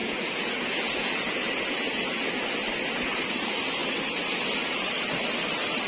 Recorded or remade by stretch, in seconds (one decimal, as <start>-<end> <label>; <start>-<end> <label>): 0.0-2.3 remade; 2.3-5.9 recorded